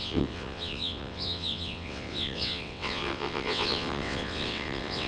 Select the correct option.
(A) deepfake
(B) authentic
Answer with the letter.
A